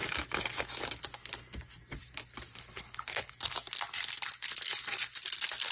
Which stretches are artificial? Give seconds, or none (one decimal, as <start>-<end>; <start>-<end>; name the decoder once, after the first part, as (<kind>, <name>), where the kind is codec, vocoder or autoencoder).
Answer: 2.5-3.3 (codec, HILCodec)

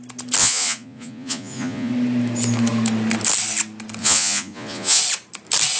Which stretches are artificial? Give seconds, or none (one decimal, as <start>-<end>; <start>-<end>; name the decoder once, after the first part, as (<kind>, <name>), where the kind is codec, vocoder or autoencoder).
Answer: 0.4-1.9 (vocoder, Vocos); 4.0-5.0